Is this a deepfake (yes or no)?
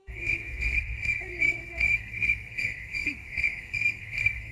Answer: yes